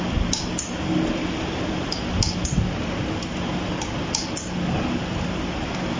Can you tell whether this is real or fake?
real